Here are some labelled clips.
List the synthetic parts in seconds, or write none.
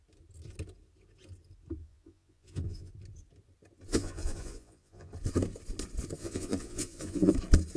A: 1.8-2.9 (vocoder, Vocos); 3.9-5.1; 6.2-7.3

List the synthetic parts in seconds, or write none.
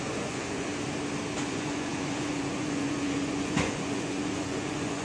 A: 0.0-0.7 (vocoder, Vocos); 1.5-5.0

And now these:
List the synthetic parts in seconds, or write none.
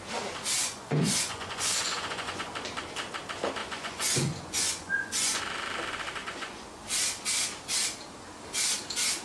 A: 0.6-2.5 (vocoder, Vocos); 3.6-5.4; 6.2-6.8